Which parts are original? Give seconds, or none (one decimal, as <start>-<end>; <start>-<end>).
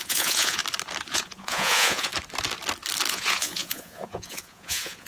0.6-1.1; 2.1-3.1